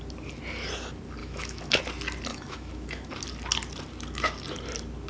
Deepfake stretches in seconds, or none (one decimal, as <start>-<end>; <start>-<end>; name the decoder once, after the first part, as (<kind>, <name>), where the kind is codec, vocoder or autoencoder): 1.2-1.8 (autoencoder, DAC-VAE); 2.3-3.1

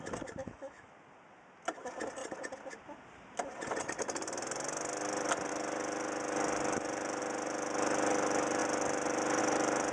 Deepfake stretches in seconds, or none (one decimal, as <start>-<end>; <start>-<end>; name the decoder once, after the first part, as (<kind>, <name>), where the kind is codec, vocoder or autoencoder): 0.4-0.9 (autoencoder, DAC-VAE)

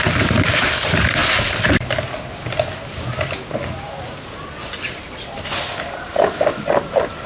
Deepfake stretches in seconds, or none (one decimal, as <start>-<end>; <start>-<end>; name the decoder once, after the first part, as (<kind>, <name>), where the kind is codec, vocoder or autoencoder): none

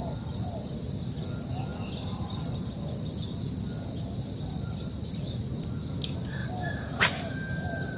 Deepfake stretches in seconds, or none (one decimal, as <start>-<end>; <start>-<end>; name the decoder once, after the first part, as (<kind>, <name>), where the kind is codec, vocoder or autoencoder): none

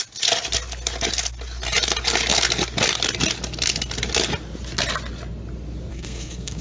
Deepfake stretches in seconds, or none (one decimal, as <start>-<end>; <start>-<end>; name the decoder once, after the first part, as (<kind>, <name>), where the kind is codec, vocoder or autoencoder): 5.9-6.6 (codec, SNAC)

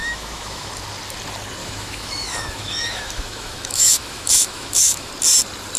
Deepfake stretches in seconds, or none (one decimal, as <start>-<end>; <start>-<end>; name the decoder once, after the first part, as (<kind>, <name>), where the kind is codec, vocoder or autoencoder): 0.0-0.7 (autoencoder, DAC-VAE); 1.6-5.1